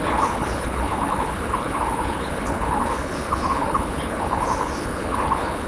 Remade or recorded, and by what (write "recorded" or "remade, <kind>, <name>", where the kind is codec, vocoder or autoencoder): remade, codec, HILCodec